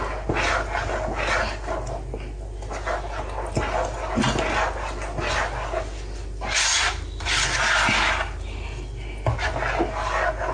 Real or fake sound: real